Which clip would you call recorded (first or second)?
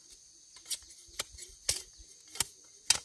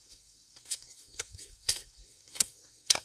first